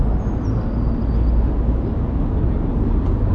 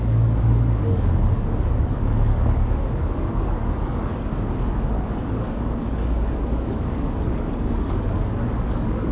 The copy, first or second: second